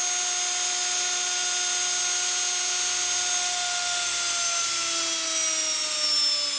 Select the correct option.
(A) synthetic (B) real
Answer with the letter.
B